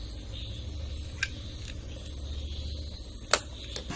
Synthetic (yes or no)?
no